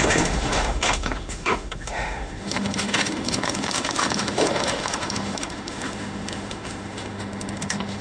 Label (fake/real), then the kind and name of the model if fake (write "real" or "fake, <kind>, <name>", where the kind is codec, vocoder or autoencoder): fake, autoencoder, DAC-VAE